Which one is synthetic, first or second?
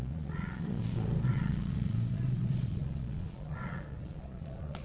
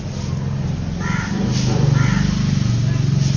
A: first